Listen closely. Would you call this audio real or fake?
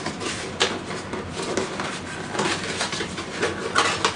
real